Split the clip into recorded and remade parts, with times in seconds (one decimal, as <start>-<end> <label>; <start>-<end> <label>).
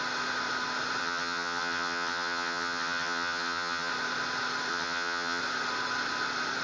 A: 0.0-1.0 recorded; 1.0-3.9 remade; 3.9-4.7 recorded; 4.7-5.4 remade; 5.4-6.6 recorded